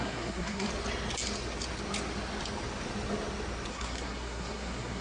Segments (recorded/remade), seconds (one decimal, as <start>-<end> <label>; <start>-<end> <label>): 0.0-0.7 remade; 0.7-3.7 recorded; 3.7-5.0 remade